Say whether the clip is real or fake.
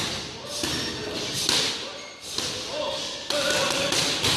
real